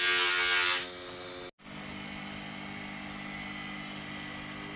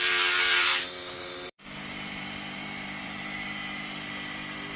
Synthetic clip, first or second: second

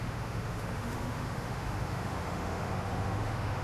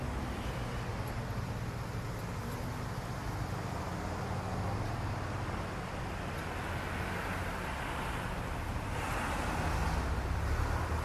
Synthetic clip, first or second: first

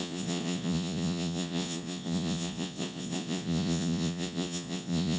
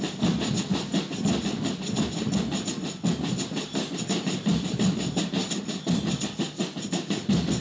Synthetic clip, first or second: first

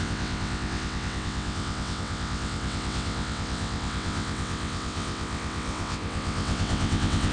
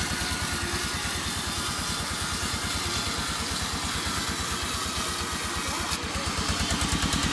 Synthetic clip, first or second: first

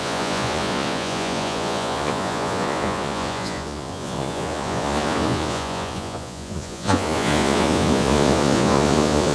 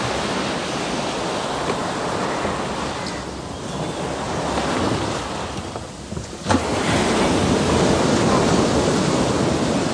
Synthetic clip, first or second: first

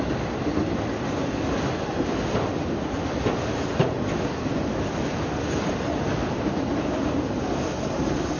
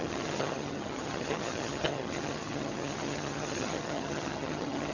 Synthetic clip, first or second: second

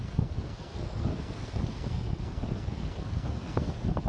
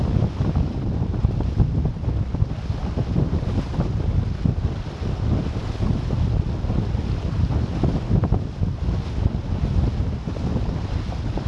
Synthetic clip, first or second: first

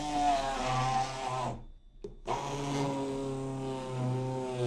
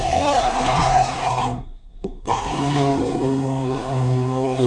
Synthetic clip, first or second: second